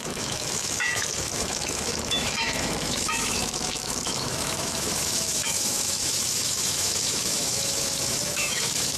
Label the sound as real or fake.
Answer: fake